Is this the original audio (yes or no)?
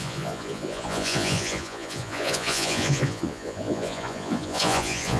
no